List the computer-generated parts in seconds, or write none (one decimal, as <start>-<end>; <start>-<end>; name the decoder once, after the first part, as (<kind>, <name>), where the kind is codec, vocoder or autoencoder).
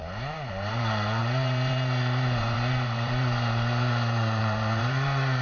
0.0-5.4 (vocoder, BigVGAN v2)